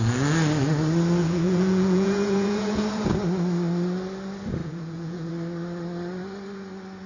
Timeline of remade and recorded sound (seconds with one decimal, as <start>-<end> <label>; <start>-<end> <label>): 0.0-1.2 recorded; 1.2-3.2 remade; 3.2-4.6 recorded; 4.6-5.3 remade; 5.3-7.1 recorded